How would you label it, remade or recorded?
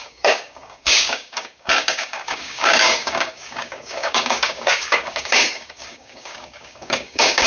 remade